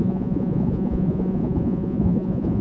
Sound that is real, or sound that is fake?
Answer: fake